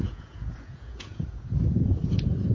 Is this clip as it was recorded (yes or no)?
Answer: no